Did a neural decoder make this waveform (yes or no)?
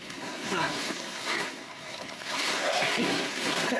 yes